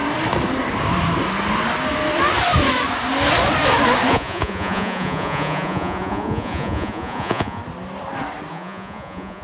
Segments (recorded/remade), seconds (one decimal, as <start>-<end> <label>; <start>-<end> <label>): 0.0-4.1 recorded; 4.1-7.6 remade; 7.6-8.5 recorded; 8.5-9.4 remade